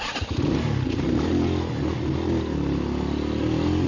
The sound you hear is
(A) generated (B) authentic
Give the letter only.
B